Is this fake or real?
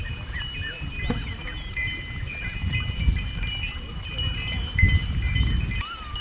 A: fake